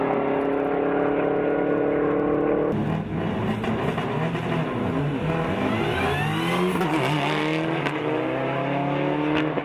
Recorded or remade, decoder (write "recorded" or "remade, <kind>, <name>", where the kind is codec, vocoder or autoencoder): recorded